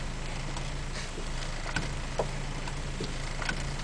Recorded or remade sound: recorded